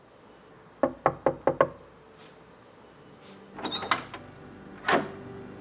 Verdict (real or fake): real